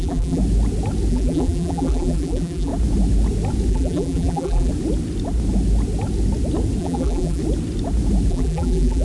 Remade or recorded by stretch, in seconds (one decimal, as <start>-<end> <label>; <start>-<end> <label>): 0.0-0.4 remade; 0.4-1.1 recorded; 1.1-2.7 remade; 2.7-3.7 recorded; 3.7-4.7 remade; 4.7-6.8 recorded; 6.8-7.4 remade; 7.4-8.3 recorded; 8.3-9.0 remade